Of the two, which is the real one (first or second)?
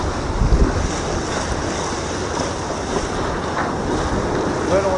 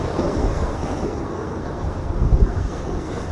first